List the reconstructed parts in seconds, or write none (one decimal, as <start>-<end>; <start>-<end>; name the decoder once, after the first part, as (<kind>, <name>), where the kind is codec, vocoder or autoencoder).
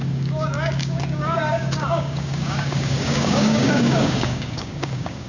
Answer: 0.0-5.3 (codec, DAC)